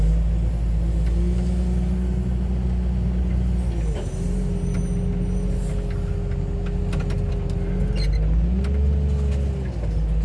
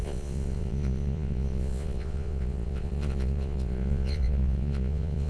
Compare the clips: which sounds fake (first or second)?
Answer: second